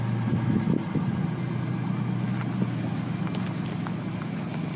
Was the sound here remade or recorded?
recorded